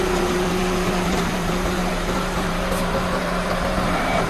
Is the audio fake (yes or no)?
yes